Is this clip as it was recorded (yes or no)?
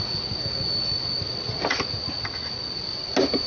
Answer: yes